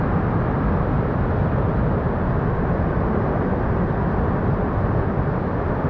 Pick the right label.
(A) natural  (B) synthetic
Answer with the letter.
A